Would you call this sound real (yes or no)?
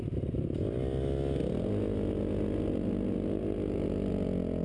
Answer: yes